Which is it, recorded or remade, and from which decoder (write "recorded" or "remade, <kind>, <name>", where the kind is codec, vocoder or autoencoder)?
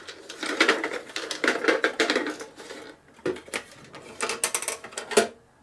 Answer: recorded